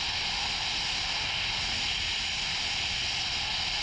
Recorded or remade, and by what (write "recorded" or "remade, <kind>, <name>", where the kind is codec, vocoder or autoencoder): recorded